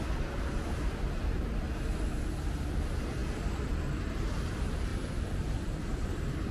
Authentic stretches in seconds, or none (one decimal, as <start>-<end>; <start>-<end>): 0.0-4.9